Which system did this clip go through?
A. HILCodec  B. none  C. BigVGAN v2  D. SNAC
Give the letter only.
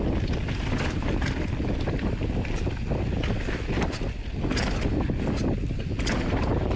B